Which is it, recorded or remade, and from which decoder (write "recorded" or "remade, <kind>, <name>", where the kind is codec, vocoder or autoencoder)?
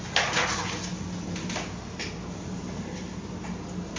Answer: recorded